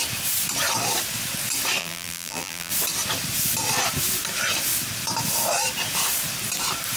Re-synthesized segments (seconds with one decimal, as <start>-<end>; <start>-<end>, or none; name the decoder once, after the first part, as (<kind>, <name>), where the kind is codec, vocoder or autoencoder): 1.8-2.7 (vocoder, BigVGAN v2)

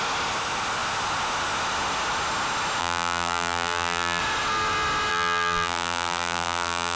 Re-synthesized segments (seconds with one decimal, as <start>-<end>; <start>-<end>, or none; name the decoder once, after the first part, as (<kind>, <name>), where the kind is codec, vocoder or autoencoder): 2.8-4.2 (vocoder, BigVGAN v2); 5.1-7.0

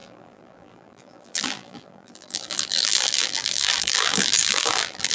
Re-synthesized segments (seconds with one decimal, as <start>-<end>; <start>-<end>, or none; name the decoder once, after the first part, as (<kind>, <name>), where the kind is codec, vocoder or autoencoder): 0.0-5.1 (vocoder, BigVGAN v2)

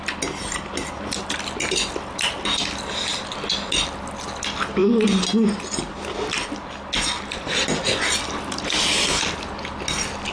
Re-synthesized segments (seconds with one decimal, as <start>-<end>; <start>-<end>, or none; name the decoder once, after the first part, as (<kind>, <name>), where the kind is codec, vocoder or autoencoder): none

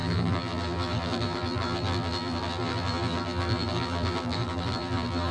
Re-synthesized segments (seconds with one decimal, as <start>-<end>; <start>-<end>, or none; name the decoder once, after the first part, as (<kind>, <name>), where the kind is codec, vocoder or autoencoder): 0.0-5.3 (vocoder, BigVGAN v2)